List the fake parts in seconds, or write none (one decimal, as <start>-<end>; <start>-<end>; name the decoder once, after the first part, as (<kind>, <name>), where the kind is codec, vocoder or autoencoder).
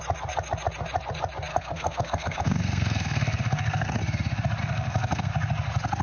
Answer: 1.5-4.0 (codec, SNAC); 4.6-5.3